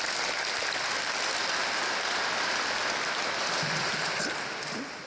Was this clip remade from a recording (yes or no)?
no